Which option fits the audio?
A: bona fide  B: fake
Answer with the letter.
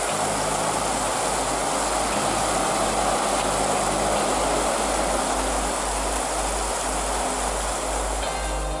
A